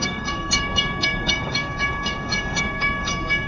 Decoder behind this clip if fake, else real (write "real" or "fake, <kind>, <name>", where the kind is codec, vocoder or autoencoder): fake, codec, DAC